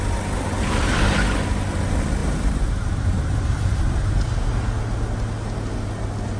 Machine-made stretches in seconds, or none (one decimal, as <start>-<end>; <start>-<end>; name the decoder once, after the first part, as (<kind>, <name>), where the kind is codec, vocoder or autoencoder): 2.2-4.1 (vocoder, BigVGAN v2)